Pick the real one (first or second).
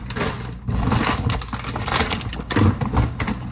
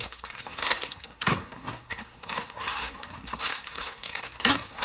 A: first